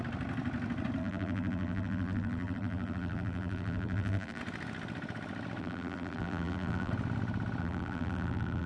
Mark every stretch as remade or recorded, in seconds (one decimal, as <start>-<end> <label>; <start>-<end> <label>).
0.0-1.0 recorded; 1.0-4.4 remade; 4.4-5.6 recorded; 5.6-6.9 remade; 6.9-7.6 recorded; 7.6-8.7 remade